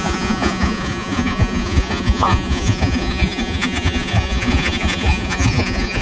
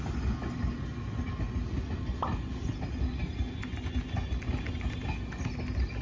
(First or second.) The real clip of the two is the second